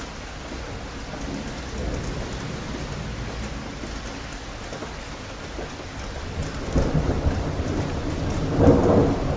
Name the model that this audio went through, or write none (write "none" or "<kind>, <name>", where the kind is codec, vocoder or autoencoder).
none